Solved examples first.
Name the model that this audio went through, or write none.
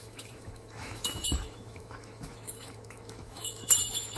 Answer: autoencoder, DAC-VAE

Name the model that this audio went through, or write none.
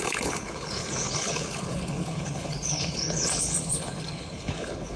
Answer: codec, HILCodec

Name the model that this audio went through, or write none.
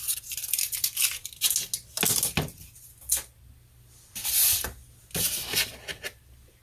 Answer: none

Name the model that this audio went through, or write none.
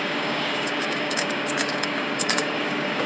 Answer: codec, DAC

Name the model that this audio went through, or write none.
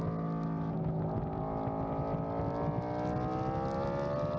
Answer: none